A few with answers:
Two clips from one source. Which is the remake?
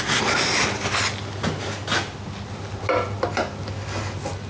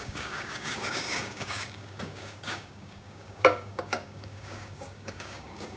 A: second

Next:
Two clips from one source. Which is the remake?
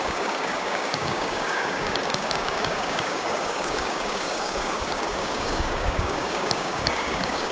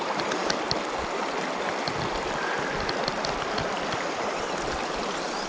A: first